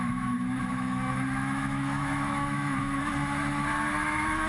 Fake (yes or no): yes